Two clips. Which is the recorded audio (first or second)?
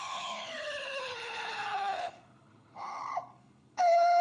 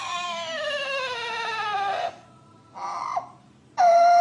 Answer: second